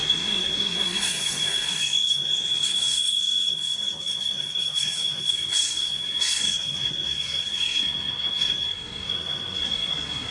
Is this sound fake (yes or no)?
yes